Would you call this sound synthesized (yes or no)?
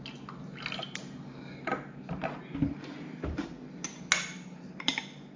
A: no